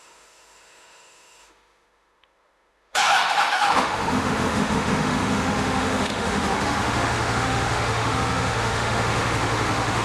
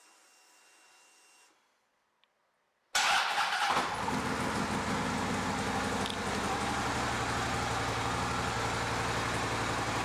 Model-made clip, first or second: first